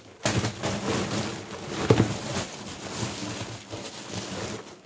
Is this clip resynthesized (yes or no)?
no